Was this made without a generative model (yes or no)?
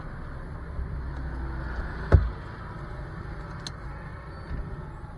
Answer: yes